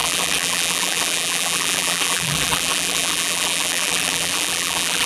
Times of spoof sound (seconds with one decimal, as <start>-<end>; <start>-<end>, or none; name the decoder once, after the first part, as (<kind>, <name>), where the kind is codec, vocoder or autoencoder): 0.0-5.1 (vocoder, BigVGAN v2)